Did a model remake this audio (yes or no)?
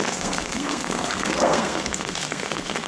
yes